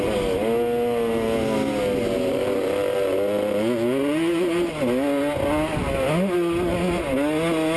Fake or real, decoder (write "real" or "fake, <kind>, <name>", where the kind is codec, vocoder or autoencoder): real